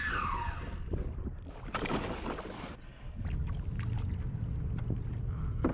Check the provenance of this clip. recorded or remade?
recorded